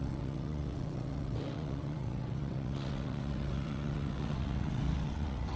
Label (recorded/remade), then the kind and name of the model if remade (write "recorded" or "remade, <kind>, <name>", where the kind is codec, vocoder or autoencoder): remade, vocoder, WaveNeXt